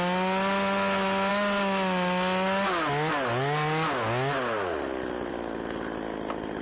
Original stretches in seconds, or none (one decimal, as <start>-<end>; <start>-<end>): 0.0-6.6